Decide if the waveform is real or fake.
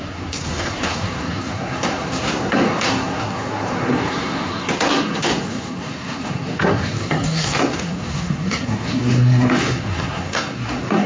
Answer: fake